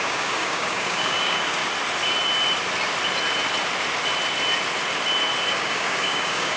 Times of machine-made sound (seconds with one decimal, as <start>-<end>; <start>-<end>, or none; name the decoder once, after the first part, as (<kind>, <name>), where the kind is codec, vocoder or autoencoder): 0.0-1.6 (codec, DAC); 5.5-6.6